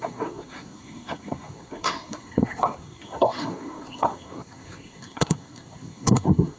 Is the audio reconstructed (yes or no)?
yes